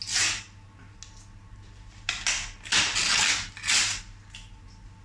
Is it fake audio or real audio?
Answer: real